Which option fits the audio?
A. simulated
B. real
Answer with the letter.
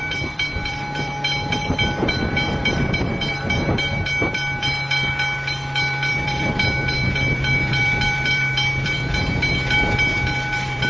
A